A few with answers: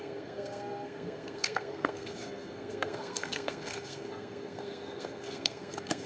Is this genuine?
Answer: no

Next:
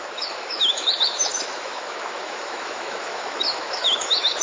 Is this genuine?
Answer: no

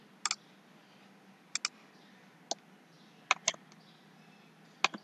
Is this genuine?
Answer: yes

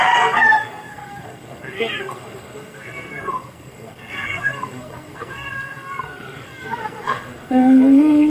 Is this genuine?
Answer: no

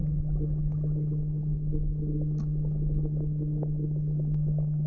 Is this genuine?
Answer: yes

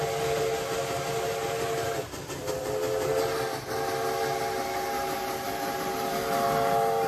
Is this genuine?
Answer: yes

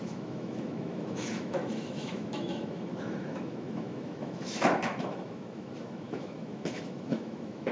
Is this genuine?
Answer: no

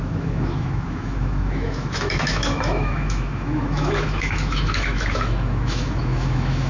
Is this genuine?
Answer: no